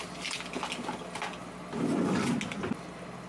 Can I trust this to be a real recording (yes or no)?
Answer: yes